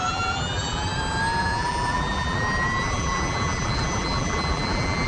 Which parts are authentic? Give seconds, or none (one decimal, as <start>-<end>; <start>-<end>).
0.9-1.4